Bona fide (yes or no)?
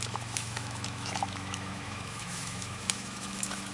no